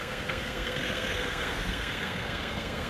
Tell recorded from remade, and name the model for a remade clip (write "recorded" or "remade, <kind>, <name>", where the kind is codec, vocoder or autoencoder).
remade, codec, SNAC